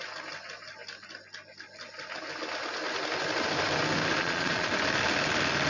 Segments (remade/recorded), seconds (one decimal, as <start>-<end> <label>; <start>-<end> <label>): 0.0-4.2 recorded; 4.2-4.7 remade; 4.7-5.7 recorded